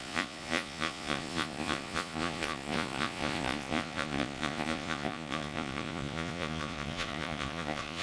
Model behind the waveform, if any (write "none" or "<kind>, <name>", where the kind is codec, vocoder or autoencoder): vocoder, Vocos